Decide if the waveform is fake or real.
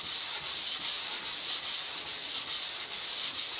real